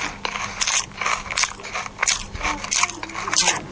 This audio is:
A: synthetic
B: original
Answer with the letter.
B